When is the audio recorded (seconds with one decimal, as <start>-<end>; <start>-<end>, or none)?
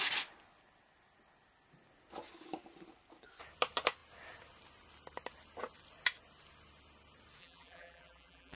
0.0-7.4